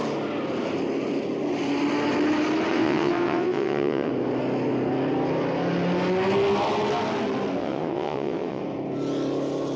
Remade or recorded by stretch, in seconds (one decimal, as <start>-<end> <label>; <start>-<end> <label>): 0.0-2.7 recorded; 2.7-4.1 remade; 4.1-7.6 recorded; 7.6-8.6 remade; 8.6-9.8 recorded